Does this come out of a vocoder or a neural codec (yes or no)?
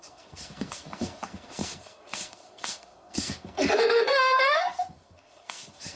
yes